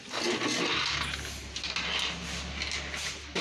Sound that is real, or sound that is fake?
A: real